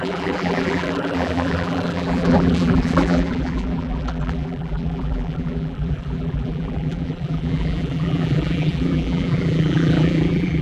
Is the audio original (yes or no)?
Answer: no